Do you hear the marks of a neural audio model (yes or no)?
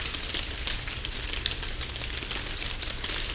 no